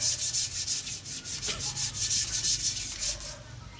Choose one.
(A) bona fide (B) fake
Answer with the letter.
A